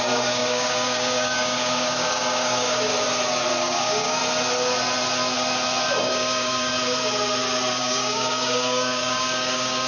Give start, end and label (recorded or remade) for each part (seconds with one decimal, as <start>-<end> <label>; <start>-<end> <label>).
0.0-2.9 remade; 2.9-3.6 recorded; 3.6-4.2 remade; 4.2-6.0 recorded; 6.0-6.7 remade; 6.7-7.8 recorded; 7.8-9.9 remade